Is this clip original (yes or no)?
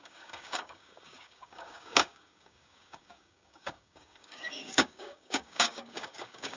no